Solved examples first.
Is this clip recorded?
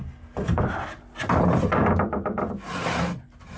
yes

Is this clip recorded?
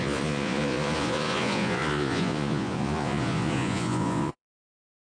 no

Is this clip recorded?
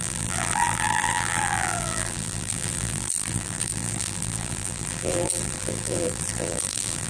no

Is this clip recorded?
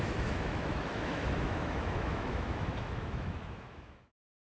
no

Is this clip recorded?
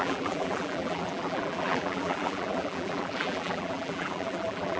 no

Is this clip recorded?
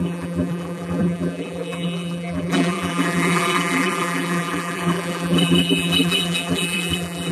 no